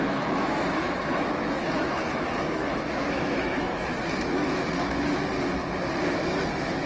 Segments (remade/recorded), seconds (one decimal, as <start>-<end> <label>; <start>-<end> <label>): 0.0-5.2 remade; 5.2-6.1 recorded; 6.1-6.9 remade